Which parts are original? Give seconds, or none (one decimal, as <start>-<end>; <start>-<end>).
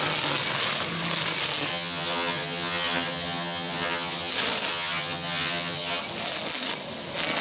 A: 0.0-1.7; 4.3-4.7; 6.0-7.4